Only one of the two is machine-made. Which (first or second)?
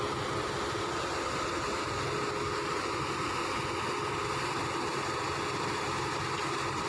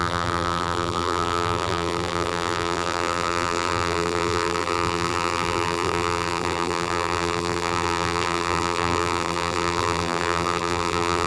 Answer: second